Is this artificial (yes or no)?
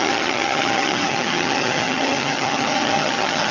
yes